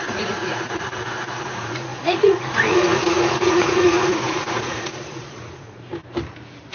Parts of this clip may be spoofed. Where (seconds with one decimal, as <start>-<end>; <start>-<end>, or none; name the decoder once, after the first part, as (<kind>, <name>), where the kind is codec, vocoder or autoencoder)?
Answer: 0.0-5.9 (vocoder, Vocos)